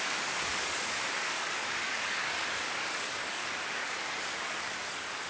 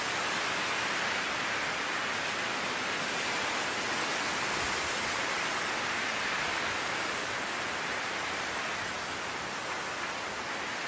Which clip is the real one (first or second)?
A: second